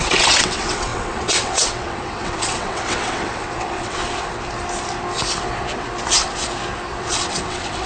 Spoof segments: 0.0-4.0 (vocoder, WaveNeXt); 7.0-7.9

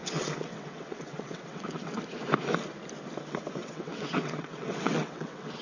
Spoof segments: 0.0-2.0 (vocoder, WaveNeXt); 3.6-5.6